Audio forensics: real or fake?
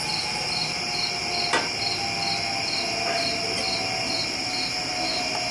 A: real